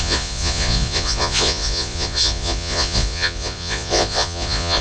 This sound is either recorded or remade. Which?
remade